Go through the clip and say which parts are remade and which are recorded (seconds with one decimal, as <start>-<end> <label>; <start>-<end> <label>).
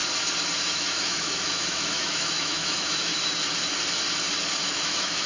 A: 0.0-0.6 recorded; 0.6-3.1 remade; 3.1-4.7 recorded; 4.7-5.3 remade